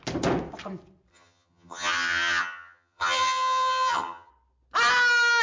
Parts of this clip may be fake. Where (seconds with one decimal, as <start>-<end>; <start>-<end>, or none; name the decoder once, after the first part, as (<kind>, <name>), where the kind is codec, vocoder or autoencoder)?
1.1-4.3 (vocoder, HiFi-GAN)